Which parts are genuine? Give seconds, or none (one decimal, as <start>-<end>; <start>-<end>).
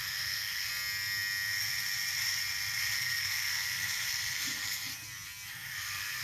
0.7-2.8; 4.9-5.5